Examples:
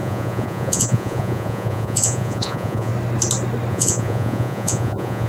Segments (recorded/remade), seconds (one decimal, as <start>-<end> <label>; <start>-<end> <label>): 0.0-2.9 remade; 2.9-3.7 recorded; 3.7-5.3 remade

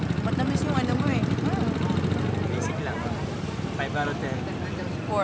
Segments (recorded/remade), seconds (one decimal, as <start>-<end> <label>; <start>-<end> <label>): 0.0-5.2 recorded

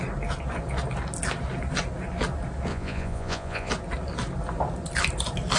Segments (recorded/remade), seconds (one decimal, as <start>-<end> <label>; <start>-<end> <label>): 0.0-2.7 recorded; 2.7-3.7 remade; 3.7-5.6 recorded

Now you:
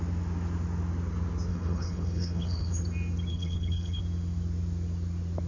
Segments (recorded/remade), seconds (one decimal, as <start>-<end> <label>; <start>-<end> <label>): 0.0-1.5 recorded; 1.5-2.8 remade; 2.8-3.3 recorded; 3.3-4.0 remade; 4.0-5.5 recorded

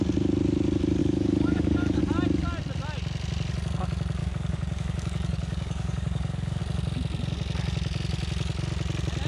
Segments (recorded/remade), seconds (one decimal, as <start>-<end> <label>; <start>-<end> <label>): 0.0-1.0 recorded; 1.0-2.0 remade; 2.0-4.2 recorded; 4.2-6.6 remade; 6.6-9.3 recorded

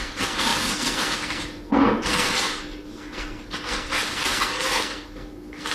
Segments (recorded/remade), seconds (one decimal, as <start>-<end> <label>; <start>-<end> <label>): 0.0-5.7 remade